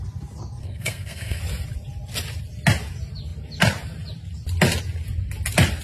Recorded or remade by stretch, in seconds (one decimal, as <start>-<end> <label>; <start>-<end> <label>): 0.0-0.6 recorded; 0.6-1.4 remade; 1.4-5.8 recorded